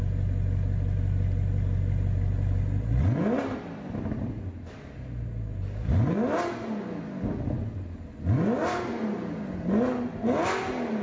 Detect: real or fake real